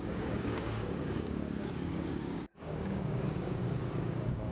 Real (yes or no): no